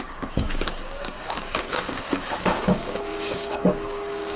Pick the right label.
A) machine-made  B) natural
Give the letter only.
A